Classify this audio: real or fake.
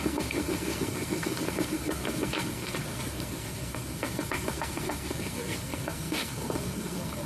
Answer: fake